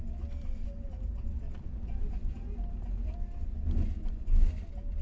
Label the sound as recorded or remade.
recorded